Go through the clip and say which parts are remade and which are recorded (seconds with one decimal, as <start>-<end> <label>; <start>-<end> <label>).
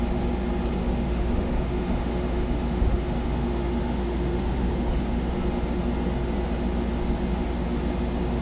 0.0-0.8 recorded; 0.8-5.3 remade; 5.3-8.4 recorded